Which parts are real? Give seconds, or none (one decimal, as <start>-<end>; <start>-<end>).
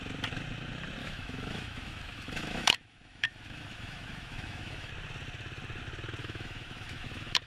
0.0-1.0; 4.9-6.2